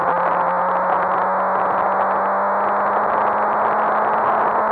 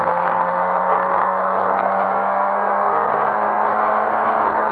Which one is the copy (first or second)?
second